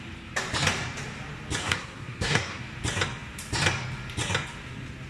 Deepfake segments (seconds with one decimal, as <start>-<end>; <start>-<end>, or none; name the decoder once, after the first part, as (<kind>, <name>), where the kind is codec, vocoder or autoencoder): 1.6-2.6 (codec, SNAC)